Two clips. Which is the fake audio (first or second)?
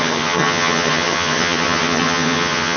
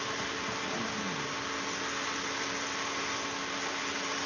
first